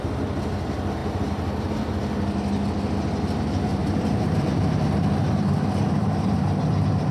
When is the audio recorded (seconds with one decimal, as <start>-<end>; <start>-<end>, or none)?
0.0-3.7; 6.6-7.1